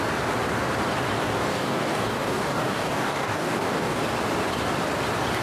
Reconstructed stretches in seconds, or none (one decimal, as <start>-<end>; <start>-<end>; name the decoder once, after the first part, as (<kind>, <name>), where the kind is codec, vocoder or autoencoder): 1.5-4.0 (codec, DAC)